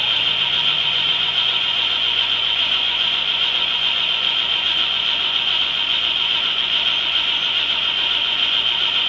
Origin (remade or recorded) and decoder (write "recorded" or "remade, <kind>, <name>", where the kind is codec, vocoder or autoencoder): remade, vocoder, Vocos